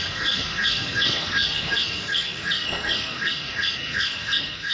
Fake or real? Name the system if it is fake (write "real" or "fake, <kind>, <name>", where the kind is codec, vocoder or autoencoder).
fake, codec, SNAC